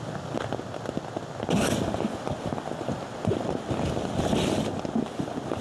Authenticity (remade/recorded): recorded